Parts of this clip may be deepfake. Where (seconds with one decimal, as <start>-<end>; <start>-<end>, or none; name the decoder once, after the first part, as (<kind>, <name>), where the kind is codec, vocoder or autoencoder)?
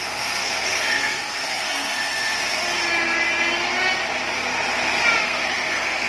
0.0-2.4 (codec, SNAC); 5.2-6.1